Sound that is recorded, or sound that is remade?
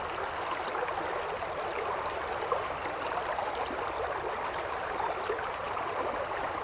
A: recorded